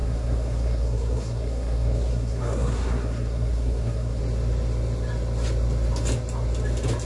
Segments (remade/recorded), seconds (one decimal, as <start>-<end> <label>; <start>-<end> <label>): 0.0-4.2 remade; 4.2-7.0 recorded